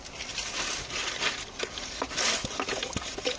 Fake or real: real